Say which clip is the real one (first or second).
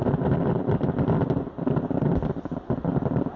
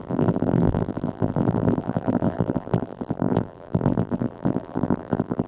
first